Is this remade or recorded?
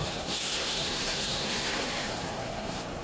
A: remade